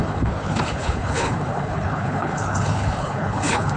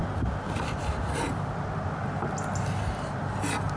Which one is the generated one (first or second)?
first